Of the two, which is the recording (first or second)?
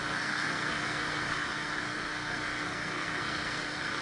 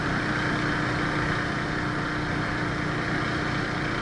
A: second